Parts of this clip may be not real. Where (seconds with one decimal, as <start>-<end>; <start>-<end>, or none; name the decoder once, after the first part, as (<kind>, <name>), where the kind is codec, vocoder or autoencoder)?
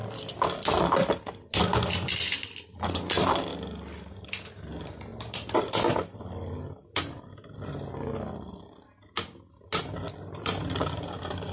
none